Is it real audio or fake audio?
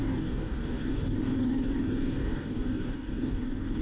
fake